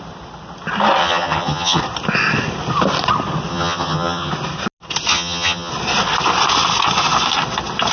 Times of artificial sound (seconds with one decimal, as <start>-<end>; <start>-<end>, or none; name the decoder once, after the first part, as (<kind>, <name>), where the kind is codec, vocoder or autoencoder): 1.0-1.8 (vocoder, HiFi-GAN); 3.5-4.3; 5.1-5.7